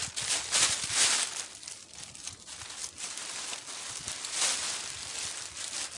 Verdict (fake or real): real